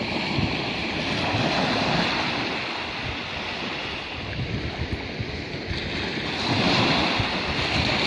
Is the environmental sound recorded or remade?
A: recorded